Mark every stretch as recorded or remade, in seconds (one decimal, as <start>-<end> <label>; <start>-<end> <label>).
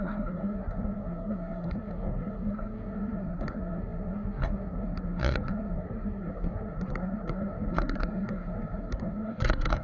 0.0-9.8 remade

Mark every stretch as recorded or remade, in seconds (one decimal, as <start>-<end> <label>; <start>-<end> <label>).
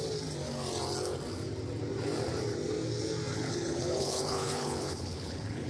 0.0-3.3 recorded; 3.3-5.7 remade